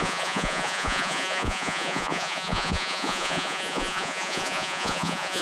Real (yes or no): no